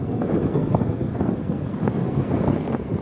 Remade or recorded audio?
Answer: remade